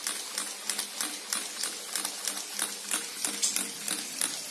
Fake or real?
real